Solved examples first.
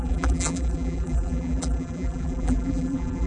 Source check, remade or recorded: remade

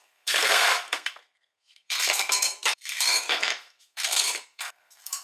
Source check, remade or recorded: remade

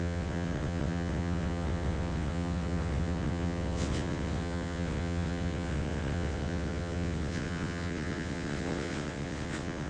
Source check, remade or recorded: remade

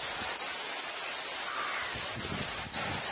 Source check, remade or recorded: recorded